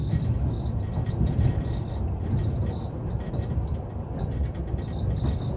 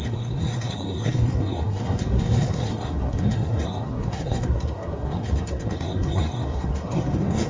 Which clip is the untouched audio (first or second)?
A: first